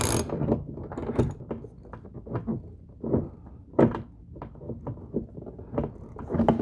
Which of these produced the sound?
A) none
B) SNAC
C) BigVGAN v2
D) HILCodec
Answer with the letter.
A